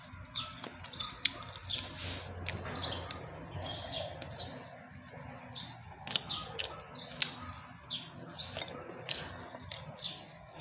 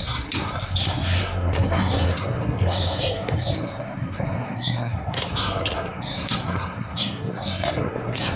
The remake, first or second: second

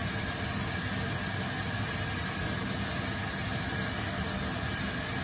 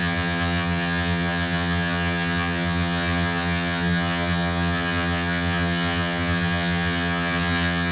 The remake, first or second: second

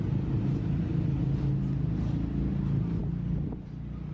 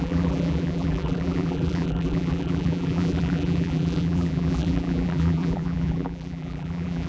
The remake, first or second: second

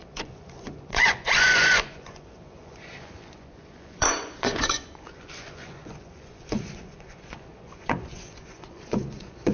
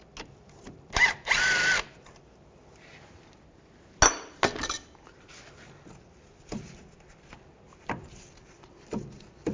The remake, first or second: first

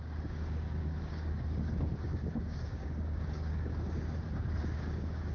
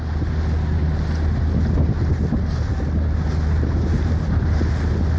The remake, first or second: first